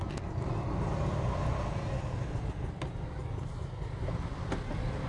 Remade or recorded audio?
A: recorded